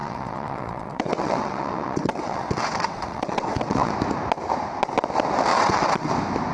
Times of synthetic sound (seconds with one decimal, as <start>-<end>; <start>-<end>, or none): 0.0-3.9; 5.5-6.1